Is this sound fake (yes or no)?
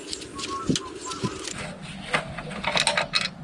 no